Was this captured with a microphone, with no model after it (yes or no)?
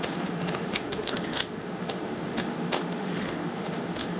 no